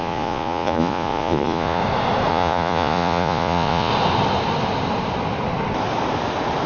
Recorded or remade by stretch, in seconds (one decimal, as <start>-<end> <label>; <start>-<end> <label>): 0.0-1.8 remade; 1.8-2.3 recorded; 2.3-3.9 remade; 3.9-6.7 recorded